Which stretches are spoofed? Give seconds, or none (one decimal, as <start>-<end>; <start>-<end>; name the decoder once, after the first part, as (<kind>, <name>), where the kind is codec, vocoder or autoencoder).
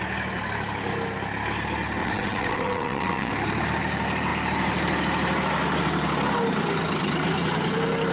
2.0-3.3 (vocoder, WaveNeXt)